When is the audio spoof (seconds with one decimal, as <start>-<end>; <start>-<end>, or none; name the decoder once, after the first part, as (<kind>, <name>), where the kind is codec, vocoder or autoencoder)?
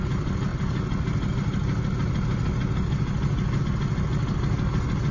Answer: none